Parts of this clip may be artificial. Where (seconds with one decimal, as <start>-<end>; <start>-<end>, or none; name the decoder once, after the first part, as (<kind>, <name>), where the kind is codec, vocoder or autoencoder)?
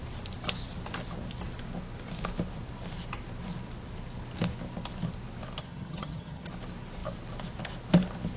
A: 5.6-6.5 (vocoder, HiFi-GAN)